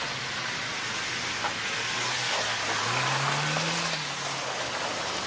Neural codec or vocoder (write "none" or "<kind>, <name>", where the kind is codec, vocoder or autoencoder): none